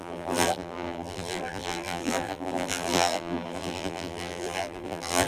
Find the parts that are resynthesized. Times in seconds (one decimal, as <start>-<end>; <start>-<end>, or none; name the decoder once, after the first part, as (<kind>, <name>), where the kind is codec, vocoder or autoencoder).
0.0-5.3 (vocoder, BigVGAN v2)